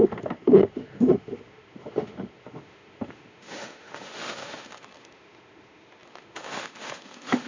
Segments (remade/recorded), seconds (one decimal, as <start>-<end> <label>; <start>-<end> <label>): 0.0-7.5 remade